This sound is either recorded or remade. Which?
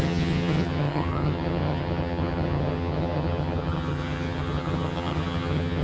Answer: remade